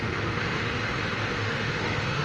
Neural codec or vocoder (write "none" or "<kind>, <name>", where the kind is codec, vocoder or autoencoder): autoencoder, DAC-VAE